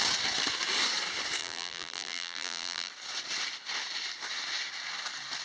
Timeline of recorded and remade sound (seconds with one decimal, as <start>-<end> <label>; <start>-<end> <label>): 0.0-1.4 recorded; 1.4-2.9 remade; 2.9-5.4 recorded